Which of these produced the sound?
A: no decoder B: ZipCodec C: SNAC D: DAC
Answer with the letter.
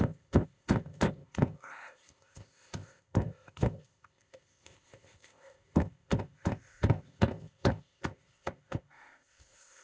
B